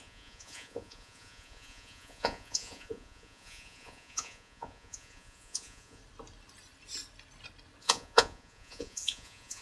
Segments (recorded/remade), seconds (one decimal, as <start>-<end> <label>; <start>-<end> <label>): 0.0-6.0 remade; 6.0-7.8 recorded; 7.8-9.6 remade